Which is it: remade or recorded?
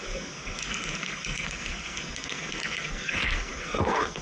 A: remade